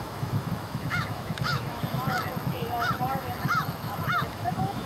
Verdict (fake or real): fake